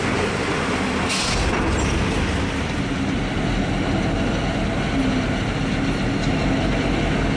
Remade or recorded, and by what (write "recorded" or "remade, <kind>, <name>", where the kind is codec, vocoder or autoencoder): recorded